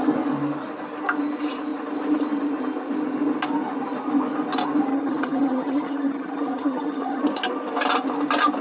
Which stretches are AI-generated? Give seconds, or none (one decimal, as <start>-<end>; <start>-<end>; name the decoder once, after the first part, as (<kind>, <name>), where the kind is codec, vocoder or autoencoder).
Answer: 4.9-7.2 (vocoder, HiFi-GAN)